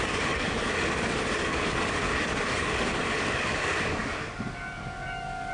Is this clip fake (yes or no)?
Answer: yes